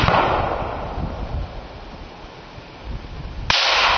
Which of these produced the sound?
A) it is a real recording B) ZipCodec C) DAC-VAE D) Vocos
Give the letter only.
A